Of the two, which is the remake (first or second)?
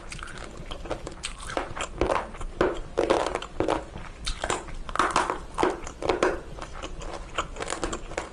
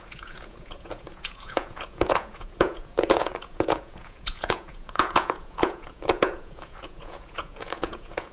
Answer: second